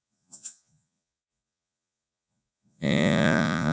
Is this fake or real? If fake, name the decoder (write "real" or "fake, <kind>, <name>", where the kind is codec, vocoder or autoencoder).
fake, vocoder, Vocos